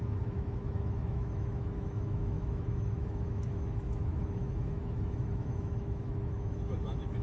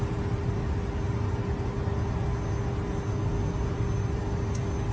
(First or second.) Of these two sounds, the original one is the second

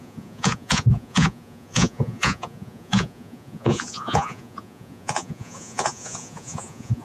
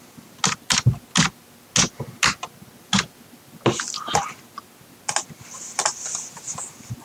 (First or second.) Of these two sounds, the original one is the second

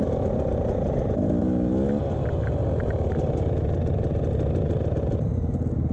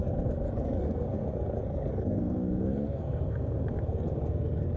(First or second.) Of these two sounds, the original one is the first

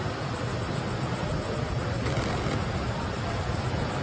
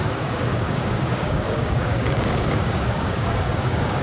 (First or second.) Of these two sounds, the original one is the first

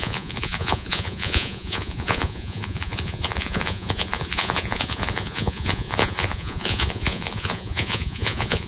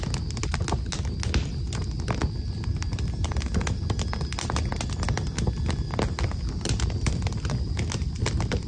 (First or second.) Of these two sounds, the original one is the second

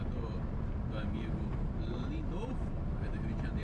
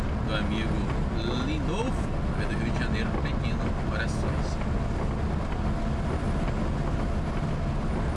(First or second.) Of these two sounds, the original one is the second